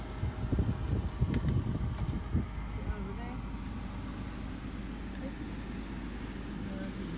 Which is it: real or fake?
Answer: real